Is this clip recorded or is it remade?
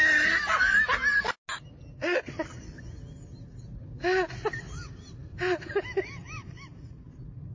recorded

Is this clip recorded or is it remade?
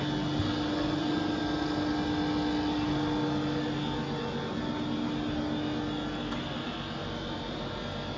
recorded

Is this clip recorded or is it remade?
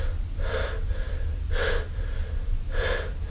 recorded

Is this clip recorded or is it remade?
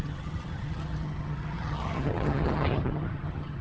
remade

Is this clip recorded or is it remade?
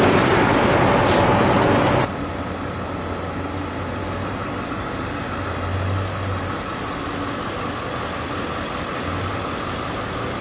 recorded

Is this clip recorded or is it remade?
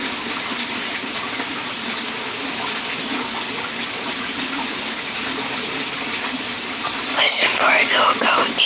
recorded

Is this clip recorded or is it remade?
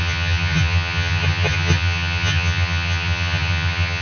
remade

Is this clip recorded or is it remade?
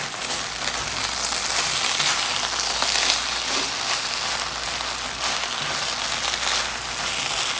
recorded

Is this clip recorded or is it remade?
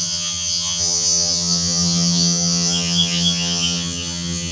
remade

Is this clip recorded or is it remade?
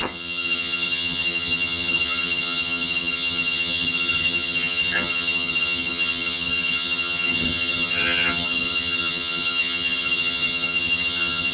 remade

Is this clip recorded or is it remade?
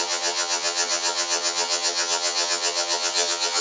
remade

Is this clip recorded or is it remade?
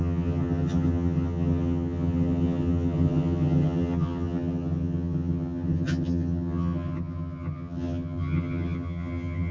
remade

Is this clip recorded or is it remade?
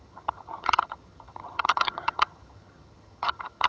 remade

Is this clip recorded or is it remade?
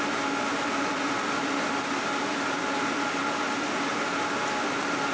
recorded